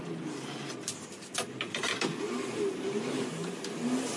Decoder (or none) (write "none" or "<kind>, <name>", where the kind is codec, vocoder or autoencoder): none